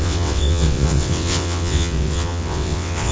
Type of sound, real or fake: fake